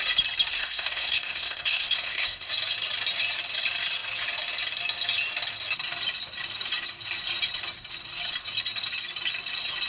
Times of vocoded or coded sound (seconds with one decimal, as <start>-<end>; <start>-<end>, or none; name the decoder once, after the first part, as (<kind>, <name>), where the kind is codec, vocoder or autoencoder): 0.6-2.5 (codec, SNAC)